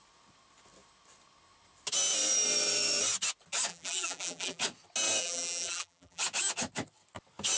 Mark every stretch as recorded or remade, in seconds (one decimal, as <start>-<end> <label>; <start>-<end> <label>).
0.0-3.7 recorded; 3.7-4.6 remade; 4.6-5.2 recorded; 5.2-6.2 remade; 6.2-7.6 recorded